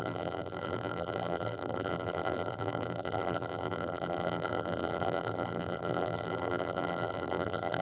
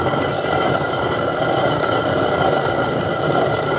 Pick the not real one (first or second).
first